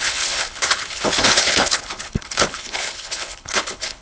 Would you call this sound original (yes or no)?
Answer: no